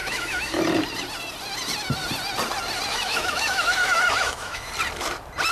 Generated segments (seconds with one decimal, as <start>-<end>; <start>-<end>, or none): 0.0-0.6; 2.9-4.7